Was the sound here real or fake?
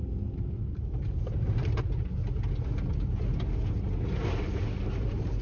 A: real